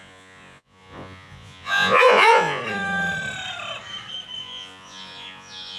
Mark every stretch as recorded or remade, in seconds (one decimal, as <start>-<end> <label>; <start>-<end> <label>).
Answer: 0.0-2.6 remade; 2.6-4.4 recorded; 4.4-5.8 remade